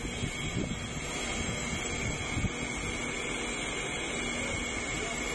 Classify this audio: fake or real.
real